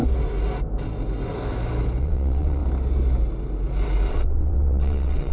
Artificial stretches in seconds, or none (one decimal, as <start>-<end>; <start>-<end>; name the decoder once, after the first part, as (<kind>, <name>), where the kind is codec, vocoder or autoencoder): 2.0-2.6 (vocoder, WaveNeXt); 4.1-5.3